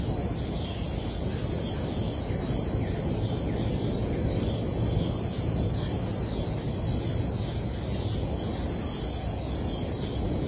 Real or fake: real